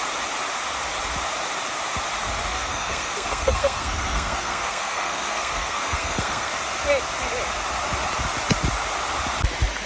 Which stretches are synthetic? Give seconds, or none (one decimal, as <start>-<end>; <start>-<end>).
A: 2.5-6.5